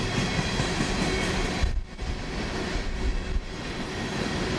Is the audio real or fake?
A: real